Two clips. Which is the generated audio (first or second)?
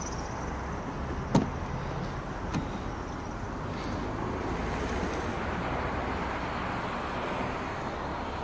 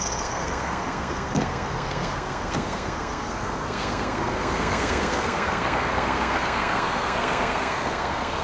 second